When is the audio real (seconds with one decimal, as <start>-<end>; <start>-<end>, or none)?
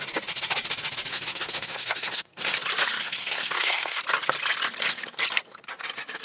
0.0-1.1; 2.5-3.0; 4.0-6.2